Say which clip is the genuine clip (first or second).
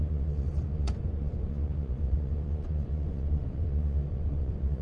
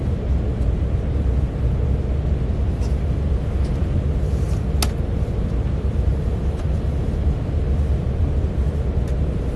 second